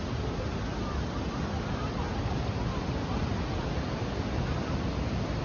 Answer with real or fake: real